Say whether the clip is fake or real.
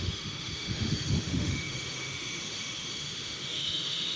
fake